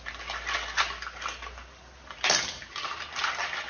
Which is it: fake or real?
real